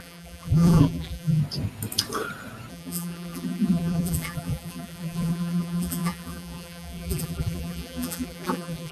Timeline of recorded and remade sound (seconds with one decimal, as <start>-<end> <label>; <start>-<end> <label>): 0.0-1.4 remade; 1.4-2.7 recorded; 2.7-8.9 remade